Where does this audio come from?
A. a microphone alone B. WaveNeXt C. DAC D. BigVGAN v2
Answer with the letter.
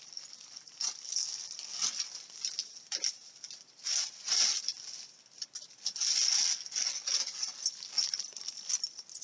A